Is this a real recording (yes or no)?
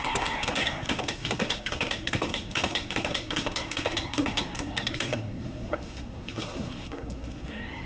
no